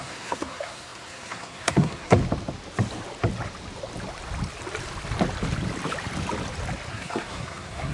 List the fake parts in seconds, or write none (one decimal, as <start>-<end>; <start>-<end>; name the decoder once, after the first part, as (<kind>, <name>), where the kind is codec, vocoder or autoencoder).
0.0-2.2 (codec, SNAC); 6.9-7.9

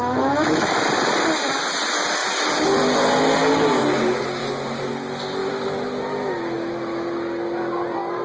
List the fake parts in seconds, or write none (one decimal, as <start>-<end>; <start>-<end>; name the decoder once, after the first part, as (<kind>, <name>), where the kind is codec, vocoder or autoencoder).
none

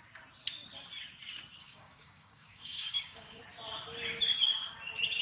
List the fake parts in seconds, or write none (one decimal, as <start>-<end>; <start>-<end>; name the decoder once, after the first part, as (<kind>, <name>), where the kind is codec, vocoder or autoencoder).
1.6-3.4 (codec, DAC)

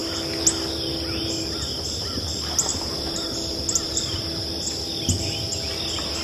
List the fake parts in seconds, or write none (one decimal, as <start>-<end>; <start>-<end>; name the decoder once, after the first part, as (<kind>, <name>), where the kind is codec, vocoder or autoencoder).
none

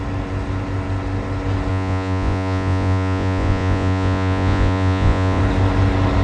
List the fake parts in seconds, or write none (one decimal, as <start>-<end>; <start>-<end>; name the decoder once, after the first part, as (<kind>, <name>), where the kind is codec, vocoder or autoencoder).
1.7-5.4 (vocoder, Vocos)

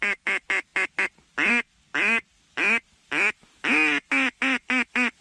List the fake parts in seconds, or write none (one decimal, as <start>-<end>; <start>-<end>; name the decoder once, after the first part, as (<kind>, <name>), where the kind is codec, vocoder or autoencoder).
none

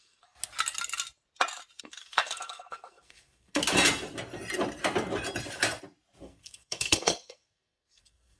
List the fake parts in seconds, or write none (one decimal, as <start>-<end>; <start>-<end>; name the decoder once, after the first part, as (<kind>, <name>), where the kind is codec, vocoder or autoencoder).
0.0-0.4 (codec, SNAC); 1.8-3.6; 6.2-8.4